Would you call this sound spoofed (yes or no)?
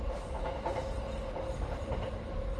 no